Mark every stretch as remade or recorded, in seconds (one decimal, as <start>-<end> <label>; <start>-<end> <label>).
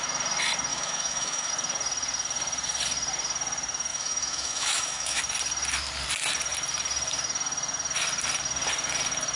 0.0-0.7 recorded; 0.7-1.5 remade; 1.5-3.9 recorded; 3.9-5.2 remade; 5.2-9.4 recorded